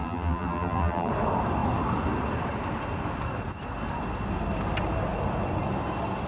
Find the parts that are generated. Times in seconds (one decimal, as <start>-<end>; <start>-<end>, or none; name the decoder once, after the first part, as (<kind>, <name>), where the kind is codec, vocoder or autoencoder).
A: 0.0-1.1 (vocoder, BigVGAN v2)